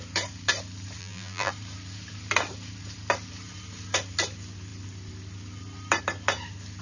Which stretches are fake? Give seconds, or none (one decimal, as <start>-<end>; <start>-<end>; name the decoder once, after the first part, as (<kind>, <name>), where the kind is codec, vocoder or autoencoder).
1.0-1.5 (vocoder, BigVGAN v2)